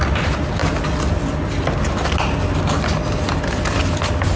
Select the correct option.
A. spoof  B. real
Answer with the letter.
B